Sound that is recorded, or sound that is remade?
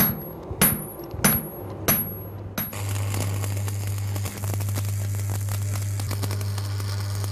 recorded